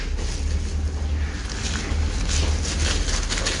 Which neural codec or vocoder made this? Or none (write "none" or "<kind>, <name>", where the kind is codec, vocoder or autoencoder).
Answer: none